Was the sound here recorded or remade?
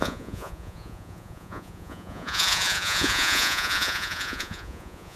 remade